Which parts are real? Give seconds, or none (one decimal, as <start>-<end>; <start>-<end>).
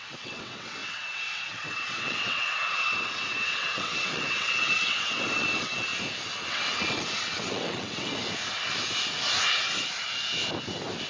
5.9-6.5; 8.1-11.1